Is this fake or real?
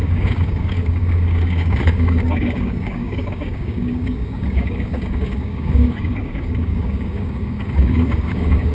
fake